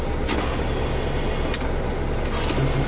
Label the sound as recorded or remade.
recorded